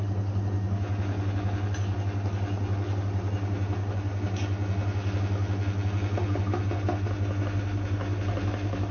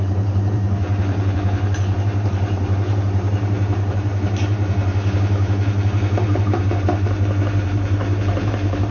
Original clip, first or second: first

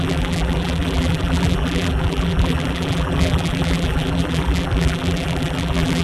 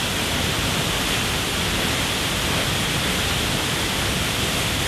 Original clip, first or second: second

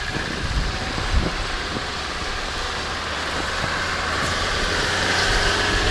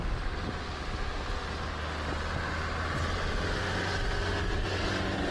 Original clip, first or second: second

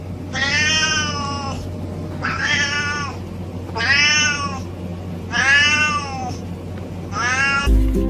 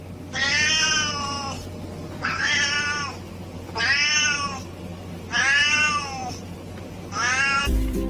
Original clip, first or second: first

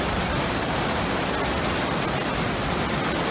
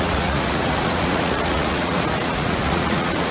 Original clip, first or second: first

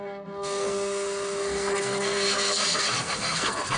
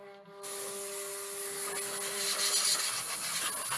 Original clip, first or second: second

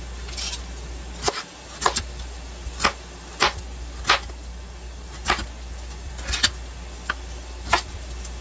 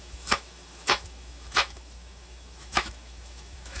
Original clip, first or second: first